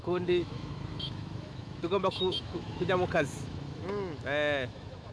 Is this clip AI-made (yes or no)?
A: yes